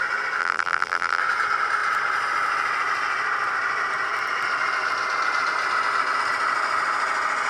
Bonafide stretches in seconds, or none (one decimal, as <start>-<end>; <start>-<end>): 0.0-0.4; 1.2-7.5